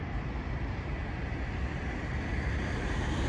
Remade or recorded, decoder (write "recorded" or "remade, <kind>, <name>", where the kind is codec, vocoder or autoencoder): remade, vocoder, BigVGAN v2